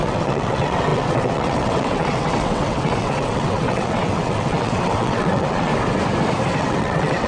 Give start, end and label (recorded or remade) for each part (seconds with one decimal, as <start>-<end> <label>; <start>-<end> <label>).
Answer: 0.0-5.7 remade; 5.7-6.6 recorded; 6.6-7.3 remade